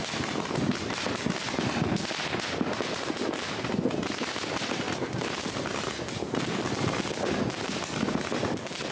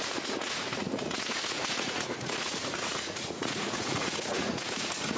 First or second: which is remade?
second